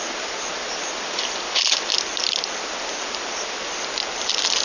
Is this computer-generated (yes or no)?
no